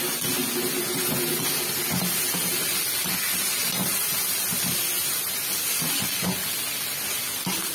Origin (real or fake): real